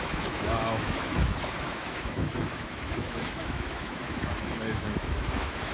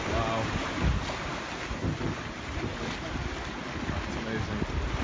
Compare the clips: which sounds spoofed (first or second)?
first